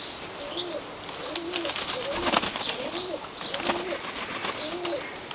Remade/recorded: recorded